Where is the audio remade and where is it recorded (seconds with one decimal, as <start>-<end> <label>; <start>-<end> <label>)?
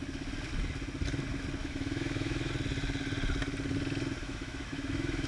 0.0-1.6 recorded; 1.6-2.5 remade; 2.5-4.2 recorded; 4.2-5.3 remade